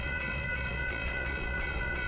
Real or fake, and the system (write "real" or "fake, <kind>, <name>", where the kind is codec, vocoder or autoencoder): fake, vocoder, Vocos